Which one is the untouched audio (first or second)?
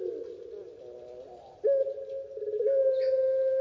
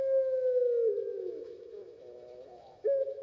first